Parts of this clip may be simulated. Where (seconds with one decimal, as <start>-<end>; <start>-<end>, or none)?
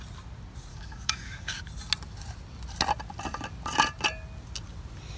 0.7-1.6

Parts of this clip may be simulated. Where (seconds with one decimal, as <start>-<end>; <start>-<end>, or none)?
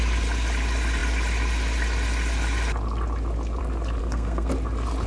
4.0-4.5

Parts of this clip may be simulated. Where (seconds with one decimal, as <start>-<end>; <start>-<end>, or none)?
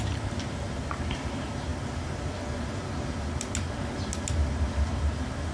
0.0-1.7; 5.0-5.5